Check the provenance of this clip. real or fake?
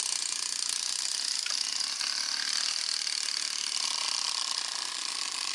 real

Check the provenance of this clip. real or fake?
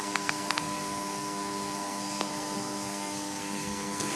fake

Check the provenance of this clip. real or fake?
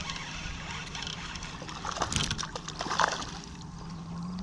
real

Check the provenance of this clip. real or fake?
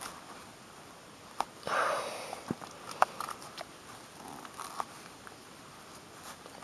real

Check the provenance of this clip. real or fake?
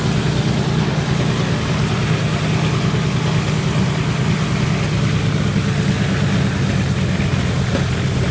real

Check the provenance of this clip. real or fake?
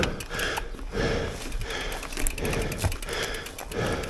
real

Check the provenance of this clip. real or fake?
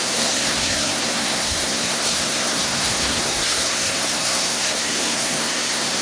fake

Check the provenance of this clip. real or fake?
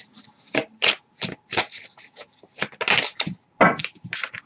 real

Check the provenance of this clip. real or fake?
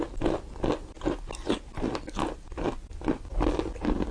real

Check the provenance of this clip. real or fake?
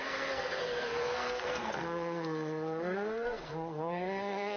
fake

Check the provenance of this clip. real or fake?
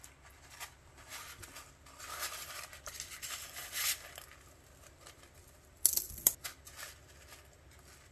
real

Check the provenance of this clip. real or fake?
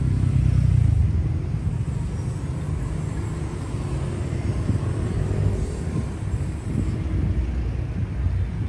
real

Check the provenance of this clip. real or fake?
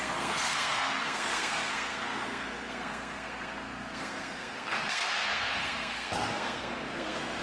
fake